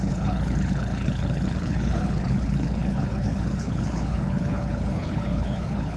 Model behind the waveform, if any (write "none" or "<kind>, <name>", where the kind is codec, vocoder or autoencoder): codec, HILCodec